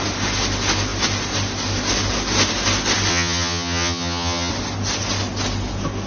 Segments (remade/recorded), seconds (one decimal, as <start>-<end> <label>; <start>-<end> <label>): 0.0-3.1 recorded; 3.1-4.5 remade; 4.5-6.1 recorded